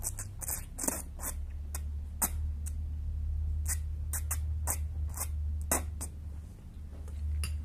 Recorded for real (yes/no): yes